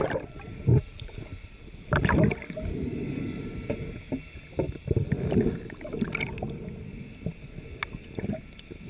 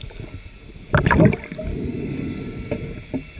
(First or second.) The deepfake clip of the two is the first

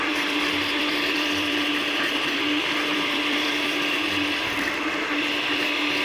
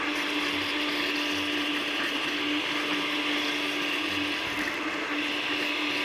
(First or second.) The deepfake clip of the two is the first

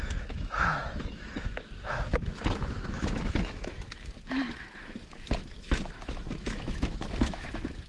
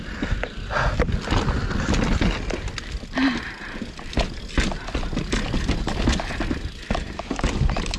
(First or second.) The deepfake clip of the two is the first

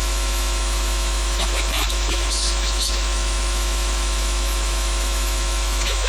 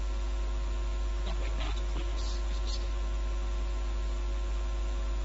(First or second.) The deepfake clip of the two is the first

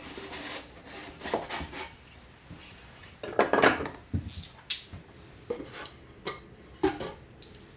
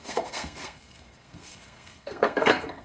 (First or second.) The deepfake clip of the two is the second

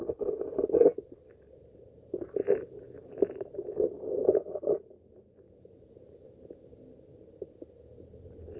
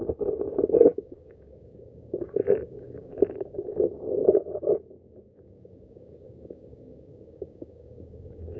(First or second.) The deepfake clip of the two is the second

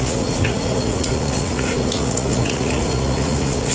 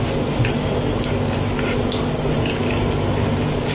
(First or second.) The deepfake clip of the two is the first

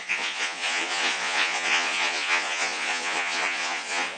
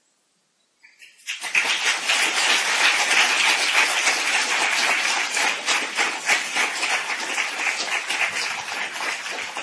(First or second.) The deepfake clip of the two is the first